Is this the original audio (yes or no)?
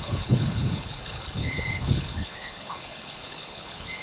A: no